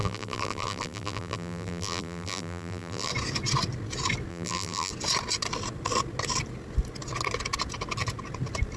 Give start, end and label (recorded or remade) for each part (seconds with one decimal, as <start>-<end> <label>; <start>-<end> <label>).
0.0-3.1 remade; 3.1-4.3 recorded; 4.3-4.9 remade; 4.9-8.8 recorded